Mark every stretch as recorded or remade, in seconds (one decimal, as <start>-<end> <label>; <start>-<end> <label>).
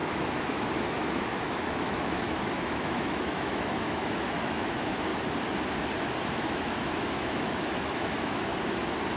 0.0-5.1 remade; 5.1-6.4 recorded; 6.4-8.5 remade; 8.5-9.2 recorded